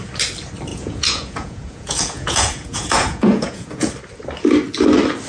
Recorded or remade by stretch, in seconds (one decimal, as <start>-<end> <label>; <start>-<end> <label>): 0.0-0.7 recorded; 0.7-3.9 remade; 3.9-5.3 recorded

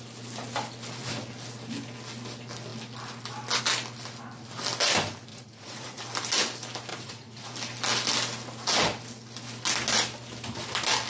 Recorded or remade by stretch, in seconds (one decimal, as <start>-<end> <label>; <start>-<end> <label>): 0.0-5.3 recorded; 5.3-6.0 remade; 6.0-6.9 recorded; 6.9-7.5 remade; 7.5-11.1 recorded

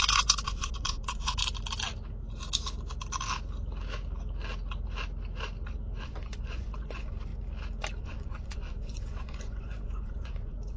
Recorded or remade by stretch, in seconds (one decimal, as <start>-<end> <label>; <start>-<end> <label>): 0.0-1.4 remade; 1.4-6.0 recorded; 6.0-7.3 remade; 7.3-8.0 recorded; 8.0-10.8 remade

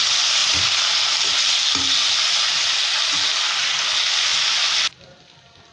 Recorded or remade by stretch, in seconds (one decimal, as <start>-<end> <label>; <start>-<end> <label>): 0.0-5.7 recorded